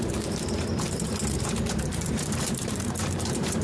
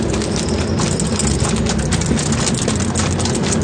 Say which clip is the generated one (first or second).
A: first